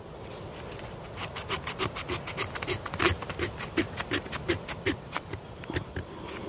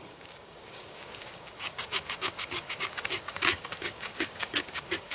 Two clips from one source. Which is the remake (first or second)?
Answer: second